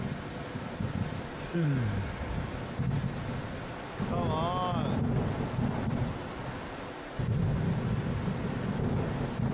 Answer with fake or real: real